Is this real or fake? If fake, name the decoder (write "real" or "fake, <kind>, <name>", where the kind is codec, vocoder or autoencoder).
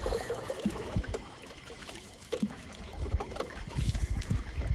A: fake, autoencoder, DAC-VAE